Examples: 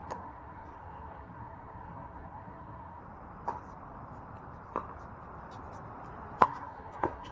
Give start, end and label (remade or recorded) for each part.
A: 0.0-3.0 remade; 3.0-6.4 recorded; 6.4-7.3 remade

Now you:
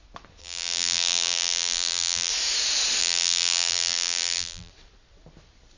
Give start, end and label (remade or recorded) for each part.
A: 0.0-0.4 recorded; 0.4-2.3 remade; 2.3-3.0 recorded; 3.0-4.7 remade; 4.7-5.8 recorded

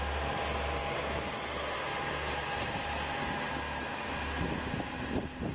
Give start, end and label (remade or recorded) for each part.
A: 0.0-0.8 recorded; 0.8-1.3 remade; 1.3-5.5 recorded

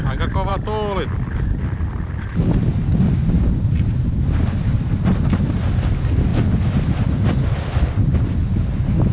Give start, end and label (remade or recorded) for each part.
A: 0.0-9.1 recorded

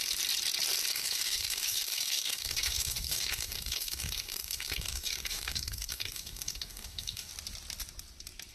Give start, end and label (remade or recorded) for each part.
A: 0.0-0.9 recorded; 0.9-7.3 remade; 7.3-8.5 recorded

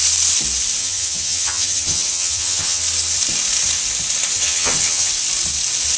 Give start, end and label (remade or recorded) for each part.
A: 0.0-0.8 recorded; 0.8-2.8 remade; 2.8-4.4 recorded; 4.4-5.1 remade; 5.1-6.0 recorded

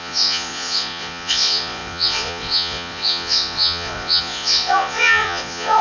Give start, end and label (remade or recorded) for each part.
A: 0.0-5.8 remade

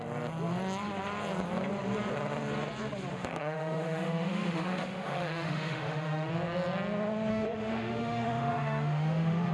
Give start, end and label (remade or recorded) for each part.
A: 0.0-3.1 recorded; 3.1-6.3 remade; 6.3-7.3 recorded; 7.3-9.5 remade